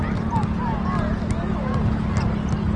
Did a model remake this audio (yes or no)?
no